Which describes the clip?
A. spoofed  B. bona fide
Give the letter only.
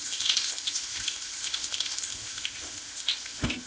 A